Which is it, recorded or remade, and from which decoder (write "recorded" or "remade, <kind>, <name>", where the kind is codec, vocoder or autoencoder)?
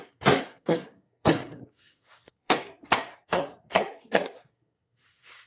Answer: remade, codec, SNAC